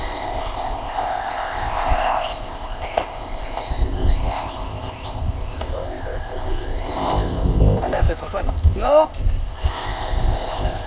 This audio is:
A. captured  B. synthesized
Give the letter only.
B